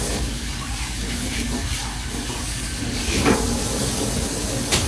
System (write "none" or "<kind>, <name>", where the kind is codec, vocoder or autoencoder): codec, DAC